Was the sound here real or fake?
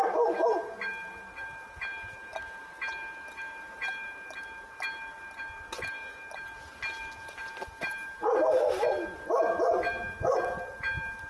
real